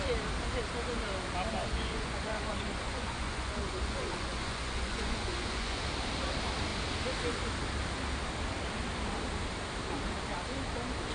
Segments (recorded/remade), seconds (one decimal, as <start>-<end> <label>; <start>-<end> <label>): 0.0-1.5 recorded; 1.5-5.8 remade; 5.8-11.1 recorded